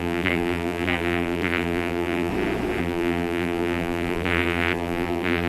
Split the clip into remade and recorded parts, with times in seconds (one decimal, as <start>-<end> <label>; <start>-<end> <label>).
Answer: 0.0-2.3 remade; 2.3-2.8 recorded; 2.8-5.5 remade